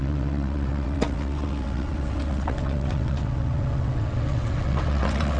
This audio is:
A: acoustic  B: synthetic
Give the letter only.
B